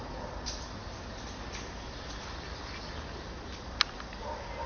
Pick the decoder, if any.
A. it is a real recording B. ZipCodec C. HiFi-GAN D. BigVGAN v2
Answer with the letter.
A